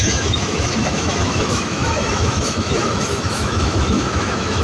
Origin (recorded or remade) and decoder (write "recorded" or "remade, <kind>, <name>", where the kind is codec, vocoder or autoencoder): remade, autoencoder, DAC-VAE